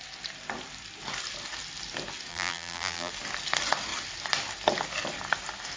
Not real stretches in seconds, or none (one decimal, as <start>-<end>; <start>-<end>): 2.3-3.1